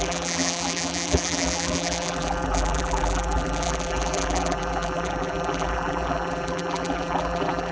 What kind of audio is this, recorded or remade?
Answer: remade